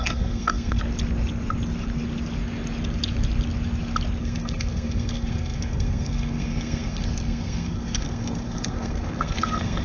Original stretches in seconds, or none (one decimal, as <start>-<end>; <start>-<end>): 0.8-4.2